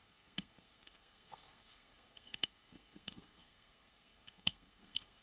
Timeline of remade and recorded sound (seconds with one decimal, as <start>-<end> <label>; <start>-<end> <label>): 0.0-5.2 remade